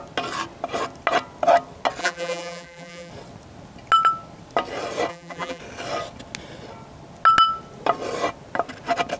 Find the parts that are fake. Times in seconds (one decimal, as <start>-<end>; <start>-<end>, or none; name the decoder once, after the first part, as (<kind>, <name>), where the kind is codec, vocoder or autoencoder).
2.0-3.1 (vocoder, BigVGAN v2); 5.1-5.6